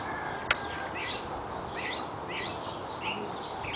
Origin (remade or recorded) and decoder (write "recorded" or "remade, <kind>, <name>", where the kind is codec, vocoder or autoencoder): recorded